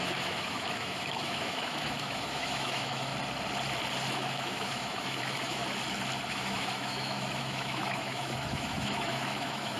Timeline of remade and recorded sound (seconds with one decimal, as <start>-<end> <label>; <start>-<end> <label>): 0.0-3.1 remade; 3.1-4.1 recorded; 4.1-5.6 remade; 5.6-6.3 recorded; 6.3-9.8 remade